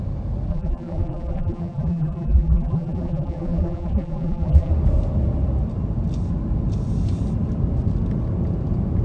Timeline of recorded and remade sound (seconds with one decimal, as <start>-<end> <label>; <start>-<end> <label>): 0.0-0.5 recorded; 0.5-4.7 remade; 4.7-9.0 recorded